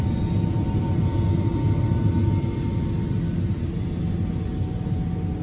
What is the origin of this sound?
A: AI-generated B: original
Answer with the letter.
B